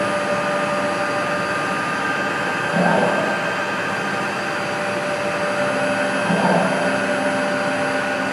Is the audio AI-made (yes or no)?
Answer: no